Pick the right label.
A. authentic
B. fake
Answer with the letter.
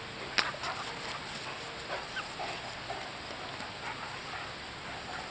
A